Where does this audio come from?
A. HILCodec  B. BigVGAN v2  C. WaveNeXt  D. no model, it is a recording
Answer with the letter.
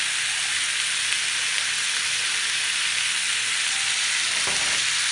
D